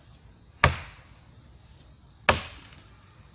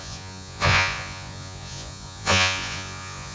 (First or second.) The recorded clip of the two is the first